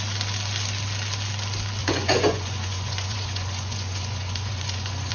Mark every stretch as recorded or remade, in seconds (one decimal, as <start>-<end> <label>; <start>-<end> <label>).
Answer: 0.0-1.8 recorded; 1.8-5.1 remade